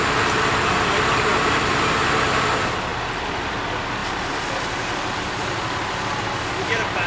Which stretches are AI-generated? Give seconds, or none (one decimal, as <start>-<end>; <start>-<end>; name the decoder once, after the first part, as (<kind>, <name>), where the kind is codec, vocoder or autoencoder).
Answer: 0.0-1.3 (vocoder, BigVGAN v2); 2.1-7.1